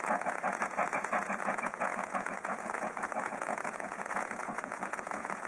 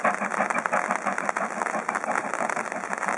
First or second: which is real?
second